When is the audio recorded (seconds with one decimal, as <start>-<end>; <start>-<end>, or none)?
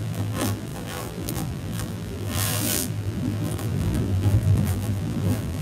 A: none